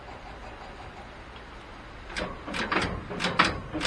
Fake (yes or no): no